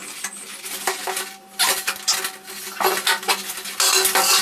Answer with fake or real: real